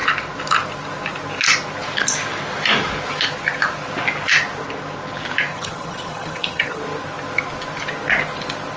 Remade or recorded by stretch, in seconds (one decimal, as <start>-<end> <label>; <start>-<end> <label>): 0.0-5.5 recorded; 5.5-6.8 remade; 6.8-8.8 recorded